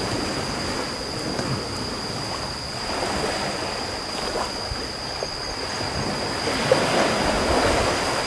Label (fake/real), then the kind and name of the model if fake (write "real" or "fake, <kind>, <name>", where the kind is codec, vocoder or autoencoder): real